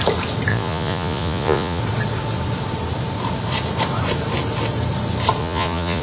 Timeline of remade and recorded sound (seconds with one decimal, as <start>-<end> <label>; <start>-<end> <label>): 0.0-0.5 recorded; 0.5-1.8 remade; 1.8-5.4 recorded; 5.4-6.0 remade